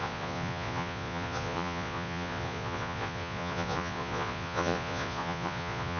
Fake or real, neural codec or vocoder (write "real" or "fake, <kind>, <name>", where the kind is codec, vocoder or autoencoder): fake, vocoder, Vocos